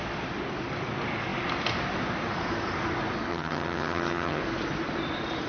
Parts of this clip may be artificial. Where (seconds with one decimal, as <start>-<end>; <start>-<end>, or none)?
3.3-4.4